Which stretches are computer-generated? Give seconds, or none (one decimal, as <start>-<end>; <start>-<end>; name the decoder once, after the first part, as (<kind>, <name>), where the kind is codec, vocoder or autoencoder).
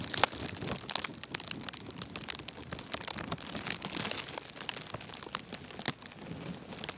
none